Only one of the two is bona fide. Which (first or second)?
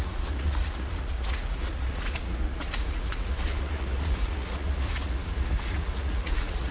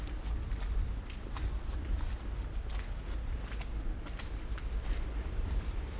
second